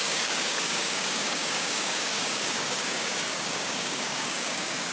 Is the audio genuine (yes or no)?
no